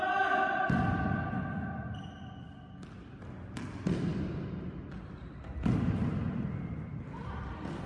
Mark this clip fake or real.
real